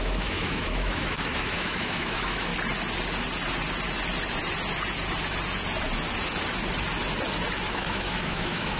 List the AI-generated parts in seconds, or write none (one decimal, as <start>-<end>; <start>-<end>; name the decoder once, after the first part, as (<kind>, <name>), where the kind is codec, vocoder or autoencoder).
0.0-2.5 (autoencoder, DAC-VAE); 7.7-8.8